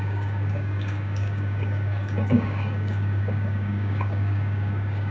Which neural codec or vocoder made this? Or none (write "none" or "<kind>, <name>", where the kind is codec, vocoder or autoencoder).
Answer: codec, DAC